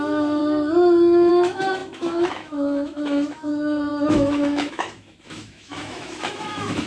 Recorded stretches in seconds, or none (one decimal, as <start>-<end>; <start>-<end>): 0.4-1.3